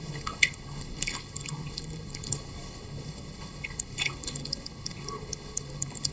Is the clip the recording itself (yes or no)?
no